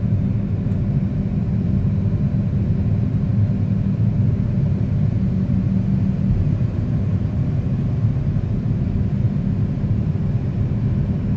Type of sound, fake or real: real